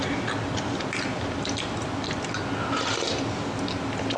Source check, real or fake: real